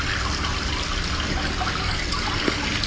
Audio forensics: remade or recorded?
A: recorded